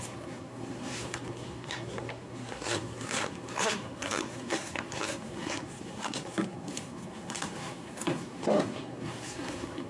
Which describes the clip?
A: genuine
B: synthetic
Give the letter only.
B